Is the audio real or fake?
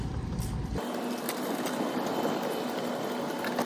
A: real